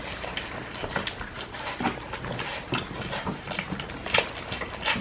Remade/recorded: recorded